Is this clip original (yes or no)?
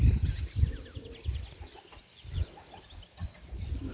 yes